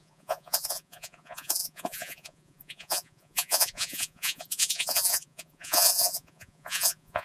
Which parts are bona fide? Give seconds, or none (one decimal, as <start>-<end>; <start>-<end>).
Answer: none